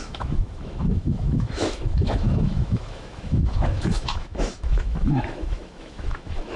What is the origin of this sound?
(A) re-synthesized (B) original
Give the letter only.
A